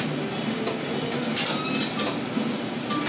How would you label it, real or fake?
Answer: real